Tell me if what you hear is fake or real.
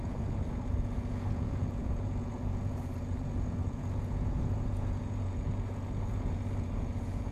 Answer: fake